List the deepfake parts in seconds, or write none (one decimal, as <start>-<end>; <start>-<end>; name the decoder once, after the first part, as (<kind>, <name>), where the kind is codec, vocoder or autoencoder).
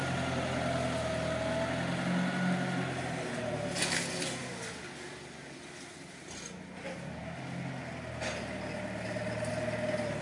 none